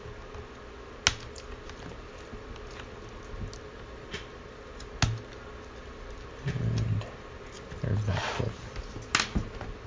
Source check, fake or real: real